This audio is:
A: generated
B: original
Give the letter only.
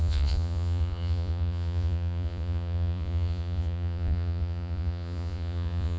A